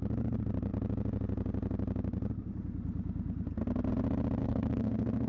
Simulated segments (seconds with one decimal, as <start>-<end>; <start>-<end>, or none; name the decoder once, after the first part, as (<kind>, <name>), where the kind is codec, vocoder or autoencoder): 4.4-5.3 (codec, SNAC)